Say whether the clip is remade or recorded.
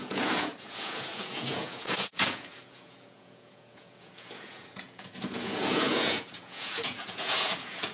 remade